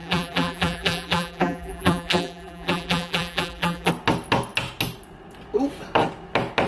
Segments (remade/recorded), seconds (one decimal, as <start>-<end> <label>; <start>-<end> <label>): 0.0-3.9 remade; 3.9-6.7 recorded